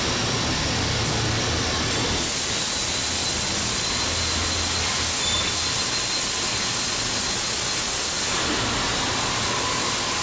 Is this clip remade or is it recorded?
recorded